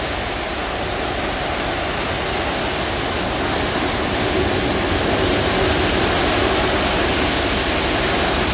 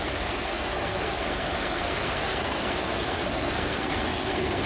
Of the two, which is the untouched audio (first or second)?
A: first